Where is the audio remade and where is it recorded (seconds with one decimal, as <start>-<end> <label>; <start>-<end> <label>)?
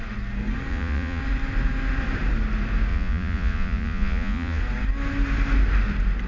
0.0-0.7 recorded; 0.7-1.2 remade; 1.2-2.9 recorded; 2.9-4.6 remade; 4.6-6.3 recorded